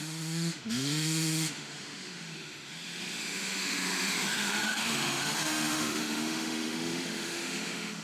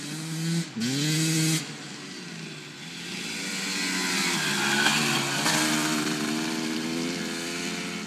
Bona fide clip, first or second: second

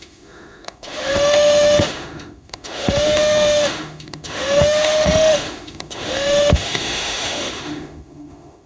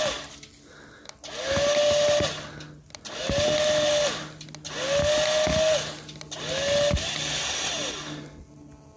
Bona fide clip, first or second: second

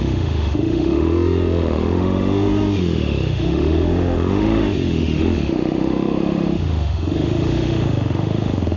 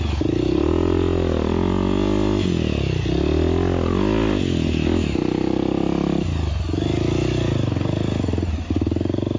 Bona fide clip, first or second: second